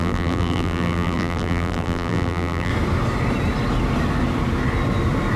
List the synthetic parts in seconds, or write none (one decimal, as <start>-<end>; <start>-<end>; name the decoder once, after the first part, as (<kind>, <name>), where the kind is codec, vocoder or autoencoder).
0.0-2.7 (vocoder, BigVGAN v2)